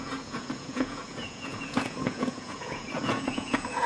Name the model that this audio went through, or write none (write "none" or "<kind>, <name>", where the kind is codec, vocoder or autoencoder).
vocoder, Vocos